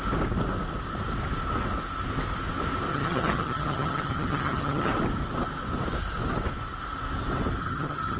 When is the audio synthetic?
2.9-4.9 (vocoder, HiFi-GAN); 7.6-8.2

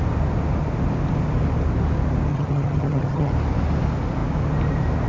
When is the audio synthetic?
2.3-3.3 (vocoder, HiFi-GAN)

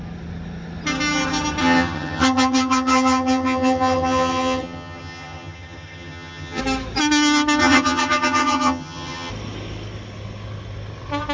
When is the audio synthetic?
1.6-6.6 (vocoder, HiFi-GAN); 7.6-9.3

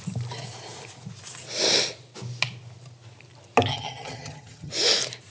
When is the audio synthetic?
3.7-4.7 (vocoder, HiFi-GAN)